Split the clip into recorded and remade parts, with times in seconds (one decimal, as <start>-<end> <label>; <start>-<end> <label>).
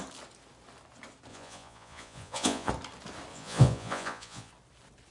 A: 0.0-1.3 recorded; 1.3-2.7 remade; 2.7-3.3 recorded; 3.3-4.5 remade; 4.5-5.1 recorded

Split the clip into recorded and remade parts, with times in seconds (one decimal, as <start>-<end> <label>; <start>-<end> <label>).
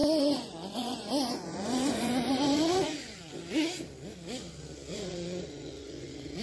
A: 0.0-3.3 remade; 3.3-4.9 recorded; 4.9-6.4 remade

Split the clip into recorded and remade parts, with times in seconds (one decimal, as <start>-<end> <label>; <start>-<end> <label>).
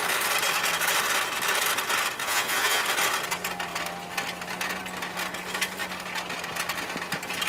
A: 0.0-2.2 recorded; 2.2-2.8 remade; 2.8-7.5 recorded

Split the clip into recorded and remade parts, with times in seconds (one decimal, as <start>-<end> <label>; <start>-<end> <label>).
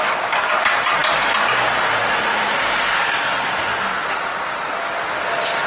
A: 0.0-5.7 recorded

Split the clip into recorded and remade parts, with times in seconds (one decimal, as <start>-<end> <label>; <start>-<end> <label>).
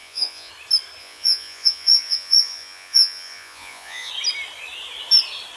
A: 0.0-0.5 remade; 0.5-1.0 recorded; 1.0-4.1 remade; 4.1-5.6 recorded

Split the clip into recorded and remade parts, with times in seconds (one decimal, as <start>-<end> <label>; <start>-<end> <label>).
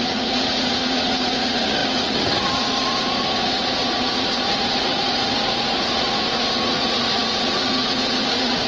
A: 0.0-8.7 remade